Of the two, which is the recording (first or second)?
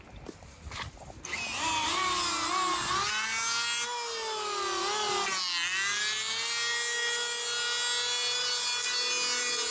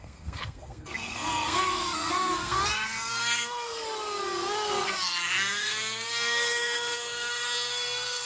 first